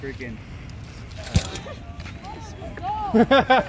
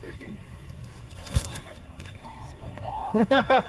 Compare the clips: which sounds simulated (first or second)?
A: second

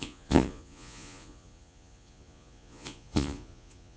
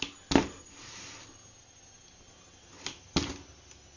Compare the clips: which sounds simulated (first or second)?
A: first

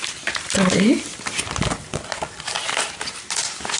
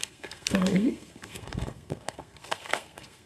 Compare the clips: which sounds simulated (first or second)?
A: second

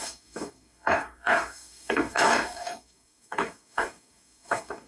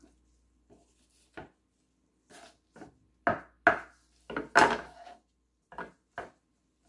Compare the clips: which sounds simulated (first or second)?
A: first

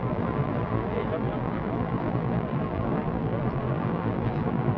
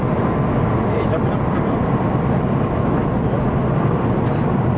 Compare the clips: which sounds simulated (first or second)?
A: first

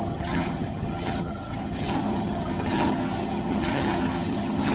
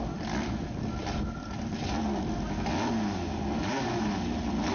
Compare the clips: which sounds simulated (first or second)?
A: first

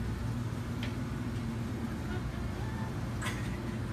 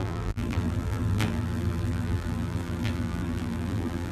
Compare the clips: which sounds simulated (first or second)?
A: second